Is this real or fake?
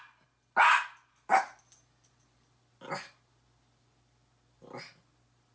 real